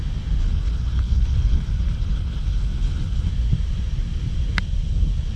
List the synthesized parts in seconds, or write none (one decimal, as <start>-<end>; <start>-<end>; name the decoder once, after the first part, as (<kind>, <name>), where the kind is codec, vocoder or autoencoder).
0.4-3.3 (codec, HILCodec)